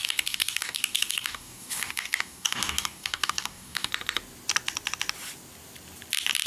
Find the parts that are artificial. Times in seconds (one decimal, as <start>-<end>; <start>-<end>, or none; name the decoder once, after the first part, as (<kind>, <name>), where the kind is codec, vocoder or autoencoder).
0.0-3.9 (codec, DAC)